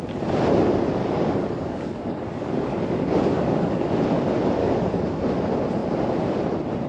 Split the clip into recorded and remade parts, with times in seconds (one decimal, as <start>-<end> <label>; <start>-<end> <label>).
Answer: 0.0-1.0 recorded; 1.0-3.9 remade; 3.9-4.6 recorded; 4.6-5.2 remade; 5.2-6.9 recorded